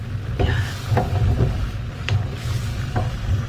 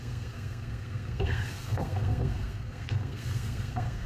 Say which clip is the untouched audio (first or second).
first